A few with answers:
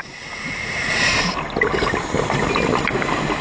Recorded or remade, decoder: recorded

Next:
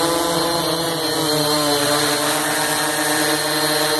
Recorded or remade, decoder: recorded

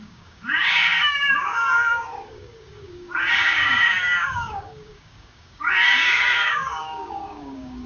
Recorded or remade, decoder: remade, codec, DAC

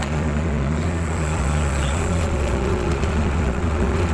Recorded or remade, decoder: remade, vocoder, Vocos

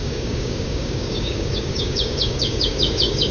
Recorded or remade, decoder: remade, codec, DAC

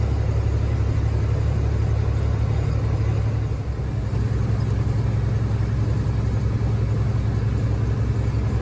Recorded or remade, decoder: recorded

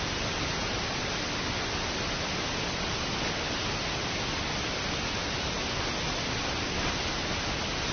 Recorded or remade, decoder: recorded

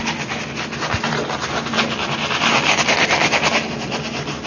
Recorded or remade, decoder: remade, vocoder, BigVGAN v2